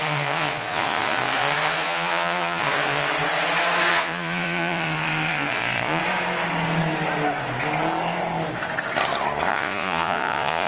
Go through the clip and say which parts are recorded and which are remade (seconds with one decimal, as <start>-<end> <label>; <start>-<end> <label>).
0.0-3.1 remade; 3.1-3.9 recorded; 3.9-6.0 remade; 6.0-9.5 recorded; 9.5-10.7 remade